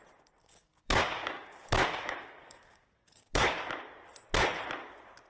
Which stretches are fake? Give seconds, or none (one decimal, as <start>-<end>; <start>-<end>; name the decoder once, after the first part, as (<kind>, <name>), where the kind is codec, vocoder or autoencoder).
0.4-3.6 (codec, DAC)